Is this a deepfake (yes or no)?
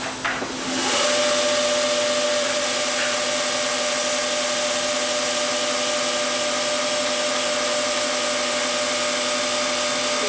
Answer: no